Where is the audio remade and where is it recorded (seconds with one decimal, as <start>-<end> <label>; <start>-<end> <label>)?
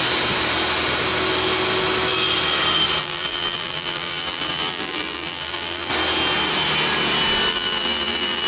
0.0-3.0 recorded; 3.0-5.9 remade; 5.9-7.5 recorded; 7.5-8.5 remade